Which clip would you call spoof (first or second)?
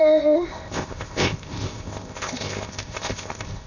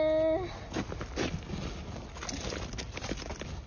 first